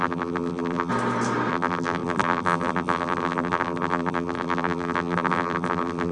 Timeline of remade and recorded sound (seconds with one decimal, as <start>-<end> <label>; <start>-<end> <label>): 0.0-0.9 remade; 0.9-1.5 recorded; 1.5-6.1 remade